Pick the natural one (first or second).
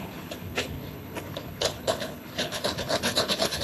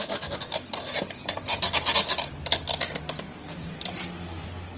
second